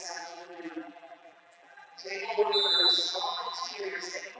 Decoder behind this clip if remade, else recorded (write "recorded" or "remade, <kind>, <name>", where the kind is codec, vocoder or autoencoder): remade, vocoder, BigVGAN v2